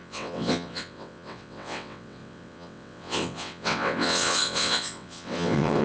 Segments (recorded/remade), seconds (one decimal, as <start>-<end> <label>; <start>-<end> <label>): 0.0-5.8 remade